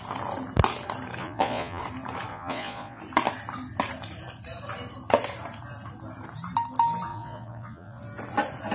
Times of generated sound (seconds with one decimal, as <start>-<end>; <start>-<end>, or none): 1.2-1.8; 2.3-3.0; 7.1-8.0